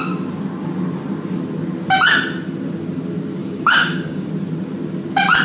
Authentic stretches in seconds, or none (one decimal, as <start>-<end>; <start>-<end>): 0.0-3.4; 4.3-5.4